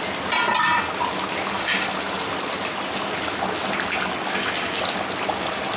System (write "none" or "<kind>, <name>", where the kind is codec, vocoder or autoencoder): none